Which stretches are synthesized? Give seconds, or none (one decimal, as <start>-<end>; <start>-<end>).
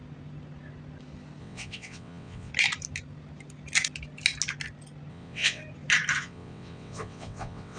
1.4-2.5; 5.1-5.6; 6.2-7.8